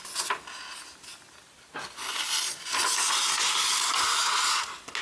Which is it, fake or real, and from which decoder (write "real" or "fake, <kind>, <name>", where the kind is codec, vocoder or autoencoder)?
real